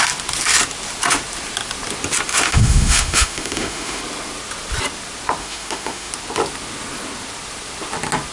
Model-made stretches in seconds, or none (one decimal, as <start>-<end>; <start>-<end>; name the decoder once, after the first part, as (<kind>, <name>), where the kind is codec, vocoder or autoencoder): 2.3-4.0 (autoencoder, DAC-VAE); 5.4-6.1

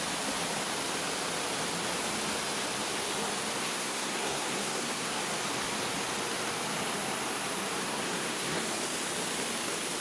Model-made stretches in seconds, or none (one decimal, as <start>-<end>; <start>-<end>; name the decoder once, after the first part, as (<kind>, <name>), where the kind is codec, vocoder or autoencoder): 3.6-5.2 (codec, SNAC); 7.8-8.6

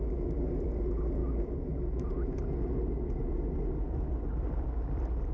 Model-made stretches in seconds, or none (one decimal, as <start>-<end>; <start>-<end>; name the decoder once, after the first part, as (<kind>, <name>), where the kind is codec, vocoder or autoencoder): none